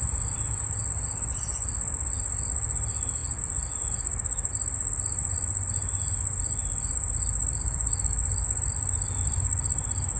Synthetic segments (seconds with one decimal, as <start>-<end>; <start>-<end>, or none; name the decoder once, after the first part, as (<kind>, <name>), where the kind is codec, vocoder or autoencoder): 3.2-4.5 (vocoder, BigVGAN v2); 7.4-10.2

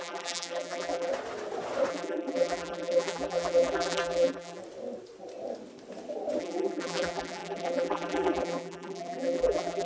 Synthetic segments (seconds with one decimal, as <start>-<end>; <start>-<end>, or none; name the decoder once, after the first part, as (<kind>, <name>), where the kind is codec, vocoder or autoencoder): 0.0-1.1 (vocoder, BigVGAN v2); 1.9-4.6; 6.4-9.8